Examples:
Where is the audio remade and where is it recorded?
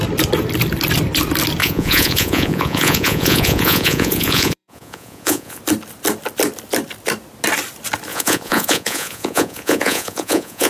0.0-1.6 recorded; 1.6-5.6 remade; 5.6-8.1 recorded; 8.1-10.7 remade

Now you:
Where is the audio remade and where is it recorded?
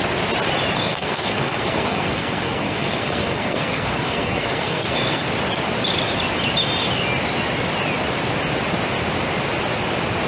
0.0-0.9 recorded; 0.9-5.3 remade; 5.3-10.3 recorded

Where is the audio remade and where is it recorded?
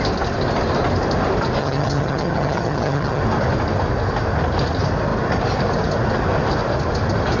0.0-1.6 recorded; 1.6-3.2 remade; 3.2-7.4 recorded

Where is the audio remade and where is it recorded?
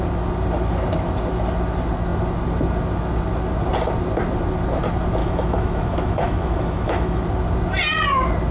0.0-5.2 recorded; 5.2-7.2 remade; 7.2-8.5 recorded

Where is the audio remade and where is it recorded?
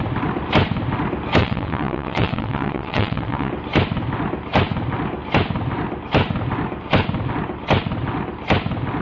0.0-1.4 recorded; 1.4-3.5 remade; 3.5-9.0 recorded